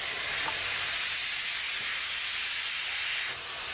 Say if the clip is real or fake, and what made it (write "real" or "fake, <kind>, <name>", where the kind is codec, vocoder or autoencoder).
real